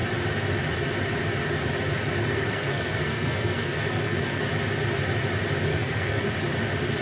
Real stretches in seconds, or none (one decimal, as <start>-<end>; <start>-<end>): 0.0-2.2; 4.4-5.7; 6.3-7.0